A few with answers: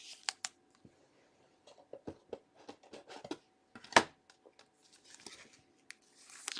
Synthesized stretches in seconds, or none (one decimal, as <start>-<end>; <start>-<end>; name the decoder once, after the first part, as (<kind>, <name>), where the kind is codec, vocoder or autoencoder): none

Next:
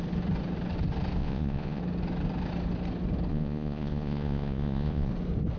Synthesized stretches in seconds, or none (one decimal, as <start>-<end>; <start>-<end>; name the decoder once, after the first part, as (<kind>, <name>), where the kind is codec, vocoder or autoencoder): 1.2-1.8 (vocoder, Vocos); 3.3-5.1

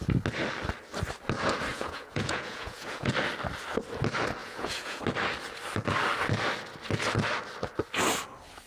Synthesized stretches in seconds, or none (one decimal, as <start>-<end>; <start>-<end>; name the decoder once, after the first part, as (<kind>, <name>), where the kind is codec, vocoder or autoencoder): 1.7-3.1 (vocoder, Vocos); 4.4-5.0

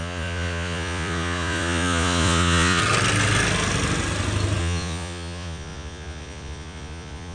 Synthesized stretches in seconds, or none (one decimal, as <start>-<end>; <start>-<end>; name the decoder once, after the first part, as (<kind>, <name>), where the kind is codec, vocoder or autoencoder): 0.0-2.8 (vocoder, Vocos); 4.6-7.3

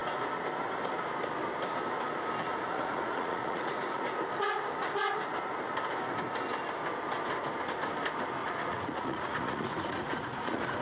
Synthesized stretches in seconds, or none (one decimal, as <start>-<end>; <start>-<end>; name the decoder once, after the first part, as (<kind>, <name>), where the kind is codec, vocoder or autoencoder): 2.4-4.0 (vocoder, Vocos); 8.4-10.8

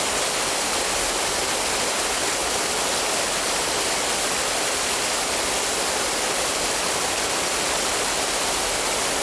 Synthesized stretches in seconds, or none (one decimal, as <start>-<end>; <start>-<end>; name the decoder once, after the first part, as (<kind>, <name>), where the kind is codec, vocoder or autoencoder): none